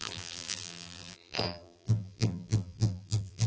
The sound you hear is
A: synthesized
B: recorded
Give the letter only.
A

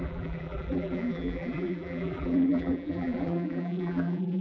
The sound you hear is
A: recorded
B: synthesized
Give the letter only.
B